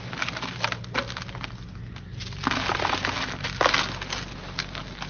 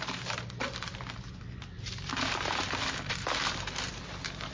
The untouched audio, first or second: first